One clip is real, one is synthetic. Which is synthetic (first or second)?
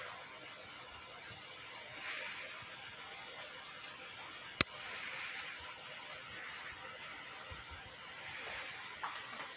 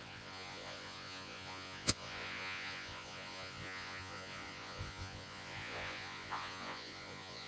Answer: second